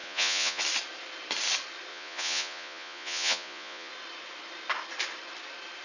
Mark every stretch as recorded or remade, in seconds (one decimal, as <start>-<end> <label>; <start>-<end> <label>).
0.0-0.6 remade; 0.6-1.9 recorded; 1.9-3.9 remade; 3.9-5.8 recorded